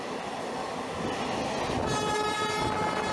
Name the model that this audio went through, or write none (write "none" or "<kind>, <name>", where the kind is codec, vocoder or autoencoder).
none